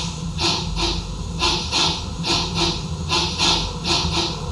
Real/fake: real